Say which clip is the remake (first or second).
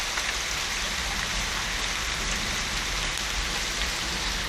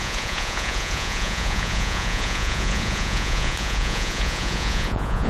second